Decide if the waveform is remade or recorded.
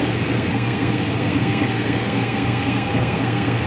remade